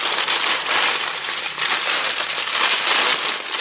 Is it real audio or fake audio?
fake